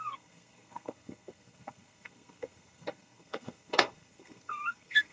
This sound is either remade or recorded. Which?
remade